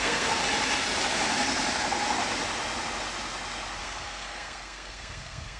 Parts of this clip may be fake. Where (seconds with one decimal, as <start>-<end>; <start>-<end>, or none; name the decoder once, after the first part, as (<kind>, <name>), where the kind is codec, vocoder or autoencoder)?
0.0-0.4 (codec, SNAC); 3.8-5.6